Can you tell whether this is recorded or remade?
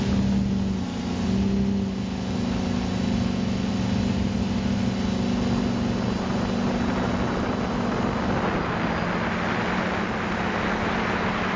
recorded